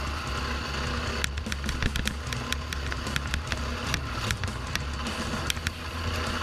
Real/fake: real